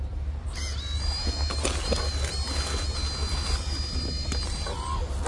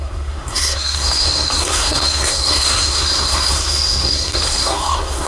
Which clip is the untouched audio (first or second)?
first